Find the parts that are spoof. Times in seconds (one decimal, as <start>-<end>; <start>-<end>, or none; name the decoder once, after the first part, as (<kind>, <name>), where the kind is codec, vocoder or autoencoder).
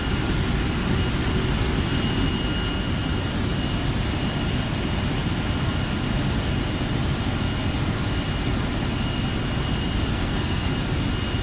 10.1-10.7 (codec, SNAC)